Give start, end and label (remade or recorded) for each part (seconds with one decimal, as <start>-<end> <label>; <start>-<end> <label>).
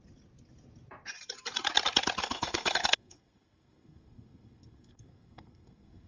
0.0-2.2 recorded; 2.2-6.1 remade